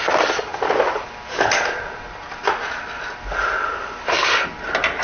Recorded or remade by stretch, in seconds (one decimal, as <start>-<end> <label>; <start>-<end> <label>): 0.0-5.0 recorded